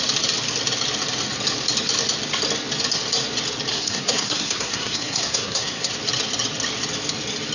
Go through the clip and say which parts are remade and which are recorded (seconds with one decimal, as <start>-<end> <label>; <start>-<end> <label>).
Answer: 0.0-3.7 recorded; 3.7-5.9 remade; 5.9-7.5 recorded